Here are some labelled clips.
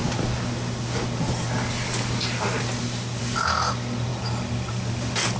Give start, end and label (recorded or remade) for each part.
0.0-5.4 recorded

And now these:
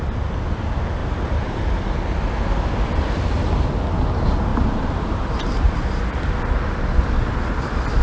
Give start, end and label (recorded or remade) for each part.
0.0-1.0 recorded; 1.0-1.6 remade; 1.6-4.5 recorded; 4.5-5.2 remade; 5.2-8.0 recorded

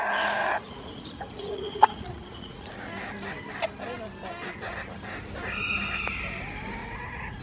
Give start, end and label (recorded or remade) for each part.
0.0-0.4 recorded; 0.4-2.7 remade; 2.7-6.8 recorded; 6.8-7.4 remade